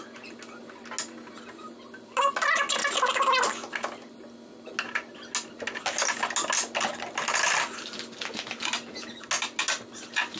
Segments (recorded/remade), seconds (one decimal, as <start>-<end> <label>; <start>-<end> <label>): 0.0-10.4 recorded